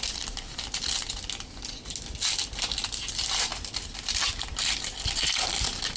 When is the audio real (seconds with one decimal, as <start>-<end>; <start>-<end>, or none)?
0.0-6.0